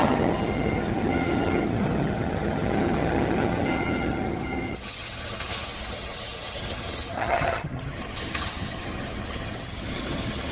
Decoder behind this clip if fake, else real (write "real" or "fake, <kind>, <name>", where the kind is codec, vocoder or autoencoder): fake, vocoder, HiFi-GAN